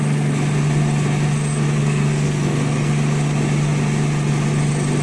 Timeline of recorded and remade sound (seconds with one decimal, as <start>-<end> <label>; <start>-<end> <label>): 0.0-1.8 recorded; 1.8-2.9 remade; 2.9-5.0 recorded